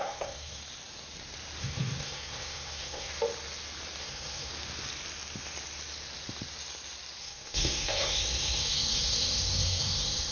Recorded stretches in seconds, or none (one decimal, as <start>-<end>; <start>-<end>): 0.6-1.6; 3.1-4.0; 4.5-7.2